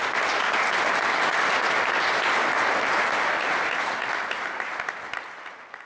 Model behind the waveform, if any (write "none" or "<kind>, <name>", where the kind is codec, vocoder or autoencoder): none